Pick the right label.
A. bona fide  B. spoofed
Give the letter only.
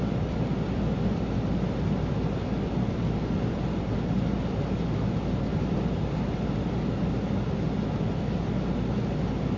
A